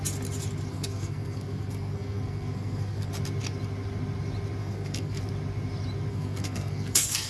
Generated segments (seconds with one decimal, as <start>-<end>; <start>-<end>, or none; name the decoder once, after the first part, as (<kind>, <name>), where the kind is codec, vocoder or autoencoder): 0.7-3.1 (codec, SNAC); 4.6-5.2; 6.1-7.3